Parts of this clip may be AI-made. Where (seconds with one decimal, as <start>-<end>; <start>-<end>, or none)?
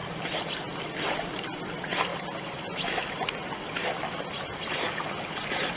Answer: none